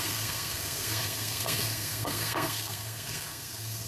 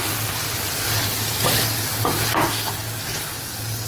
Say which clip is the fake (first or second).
first